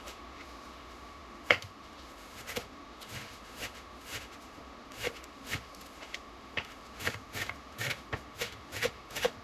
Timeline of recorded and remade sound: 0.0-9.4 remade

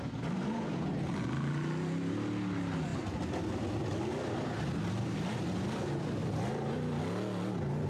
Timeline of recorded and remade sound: 0.0-6.2 recorded; 6.2-7.0 remade; 7.0-7.9 recorded

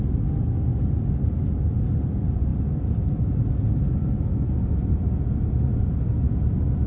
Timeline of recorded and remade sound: 0.0-6.9 recorded

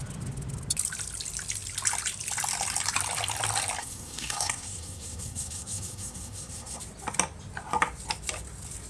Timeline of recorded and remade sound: 0.0-3.8 recorded; 3.8-6.8 remade; 6.8-8.9 recorded

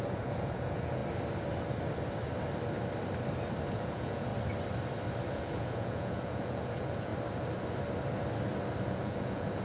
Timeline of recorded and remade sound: 0.0-1.0 remade; 1.0-3.7 recorded; 3.7-4.3 remade; 4.3-5.3 recorded; 5.3-7.1 remade; 7.1-8.8 recorded; 8.8-9.6 remade

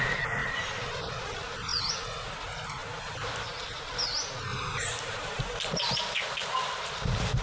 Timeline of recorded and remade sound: 0.0-0.4 recorded; 0.4-1.2 remade; 1.2-4.5 recorded; 4.5-5.4 remade; 5.4-7.4 recorded

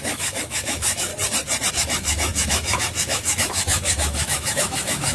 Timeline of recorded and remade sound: 0.0-1.1 remade; 1.1-1.7 recorded; 1.7-5.1 remade

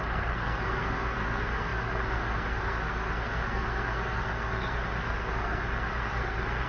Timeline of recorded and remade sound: 0.0-6.7 remade